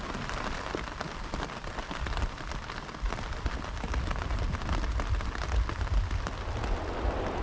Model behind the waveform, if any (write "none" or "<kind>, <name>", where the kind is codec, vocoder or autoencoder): none